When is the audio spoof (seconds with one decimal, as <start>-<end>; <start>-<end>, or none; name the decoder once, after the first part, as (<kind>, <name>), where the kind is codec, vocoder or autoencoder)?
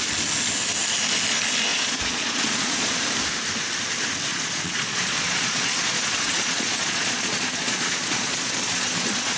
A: 1.7-2.9 (vocoder, Vocos); 4.3-9.4